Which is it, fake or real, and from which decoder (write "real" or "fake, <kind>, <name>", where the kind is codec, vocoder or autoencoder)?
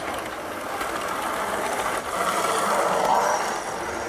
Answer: fake, vocoder, BigVGAN v2